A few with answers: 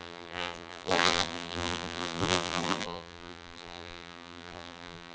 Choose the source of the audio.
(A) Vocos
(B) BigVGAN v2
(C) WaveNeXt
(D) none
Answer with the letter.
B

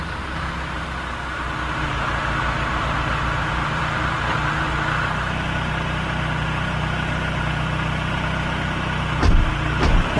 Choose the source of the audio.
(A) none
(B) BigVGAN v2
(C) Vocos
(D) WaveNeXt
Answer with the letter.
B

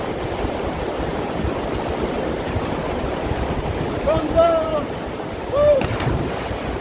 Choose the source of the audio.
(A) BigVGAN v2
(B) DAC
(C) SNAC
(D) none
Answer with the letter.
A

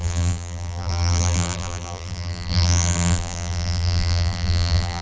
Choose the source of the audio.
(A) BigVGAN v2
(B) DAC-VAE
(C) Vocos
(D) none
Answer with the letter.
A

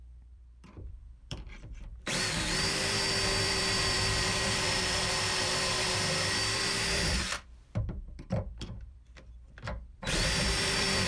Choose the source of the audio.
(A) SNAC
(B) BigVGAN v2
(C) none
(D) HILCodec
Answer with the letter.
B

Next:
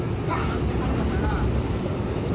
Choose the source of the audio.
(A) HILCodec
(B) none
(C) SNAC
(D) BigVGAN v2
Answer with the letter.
D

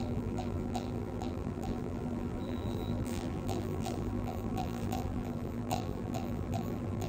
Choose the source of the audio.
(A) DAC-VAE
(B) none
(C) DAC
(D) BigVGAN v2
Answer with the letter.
D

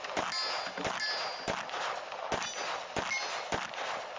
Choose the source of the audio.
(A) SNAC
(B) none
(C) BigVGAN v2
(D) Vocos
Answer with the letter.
B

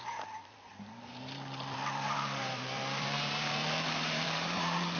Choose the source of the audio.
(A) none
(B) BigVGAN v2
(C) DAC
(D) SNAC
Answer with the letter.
B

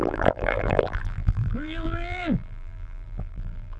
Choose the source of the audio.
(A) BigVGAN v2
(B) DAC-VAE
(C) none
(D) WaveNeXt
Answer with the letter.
A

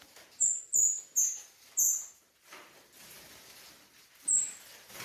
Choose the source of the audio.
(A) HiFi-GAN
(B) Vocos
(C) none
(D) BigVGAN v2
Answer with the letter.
C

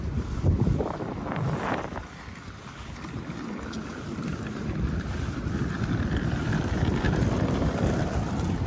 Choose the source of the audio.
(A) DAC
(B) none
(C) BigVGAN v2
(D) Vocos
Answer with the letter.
C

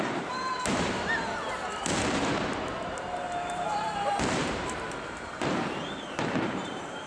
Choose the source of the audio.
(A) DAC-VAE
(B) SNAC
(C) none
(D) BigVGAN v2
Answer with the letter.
D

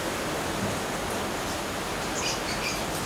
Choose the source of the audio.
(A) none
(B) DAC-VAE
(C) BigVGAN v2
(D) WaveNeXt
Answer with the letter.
A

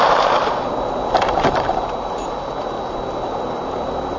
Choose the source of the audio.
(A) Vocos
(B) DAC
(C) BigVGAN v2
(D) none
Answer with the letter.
C